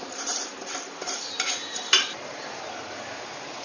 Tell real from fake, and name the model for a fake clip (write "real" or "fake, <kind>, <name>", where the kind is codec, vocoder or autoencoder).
fake, vocoder, BigVGAN v2